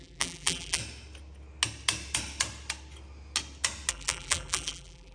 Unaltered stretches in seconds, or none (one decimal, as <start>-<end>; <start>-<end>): 0.8-3.9